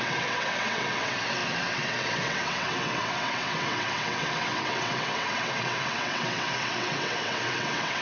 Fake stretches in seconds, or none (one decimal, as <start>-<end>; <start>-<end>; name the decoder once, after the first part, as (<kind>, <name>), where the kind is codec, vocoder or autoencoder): 0.0-8.0 (vocoder, WaveNeXt)